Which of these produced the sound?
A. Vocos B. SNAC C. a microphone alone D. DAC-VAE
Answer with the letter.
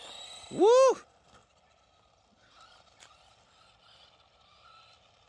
C